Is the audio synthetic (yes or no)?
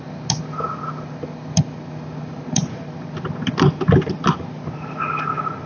no